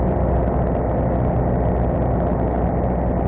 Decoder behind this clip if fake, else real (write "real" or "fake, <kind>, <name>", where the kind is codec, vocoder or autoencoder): real